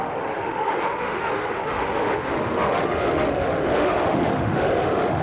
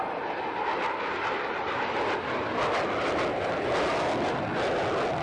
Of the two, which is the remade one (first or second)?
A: first